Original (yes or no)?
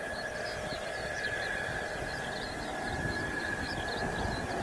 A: yes